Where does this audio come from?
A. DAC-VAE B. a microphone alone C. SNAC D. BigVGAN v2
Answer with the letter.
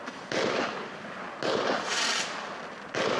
B